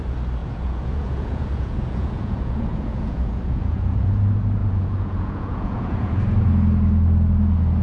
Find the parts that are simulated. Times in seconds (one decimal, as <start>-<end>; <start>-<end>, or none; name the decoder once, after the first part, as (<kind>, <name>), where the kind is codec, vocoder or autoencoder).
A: 0.4-4.1 (vocoder, Vocos); 4.6-6.2